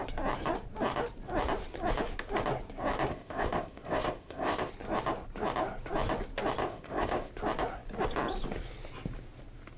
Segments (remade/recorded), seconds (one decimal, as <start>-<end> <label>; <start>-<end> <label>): 0.0-3.1 recorded; 3.1-4.7 remade; 4.7-6.6 recorded; 6.6-7.3 remade; 7.3-9.8 recorded